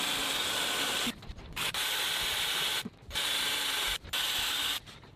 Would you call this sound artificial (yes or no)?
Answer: no